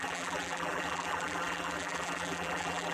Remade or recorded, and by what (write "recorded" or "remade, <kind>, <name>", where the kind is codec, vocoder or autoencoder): remade, vocoder, BigVGAN v2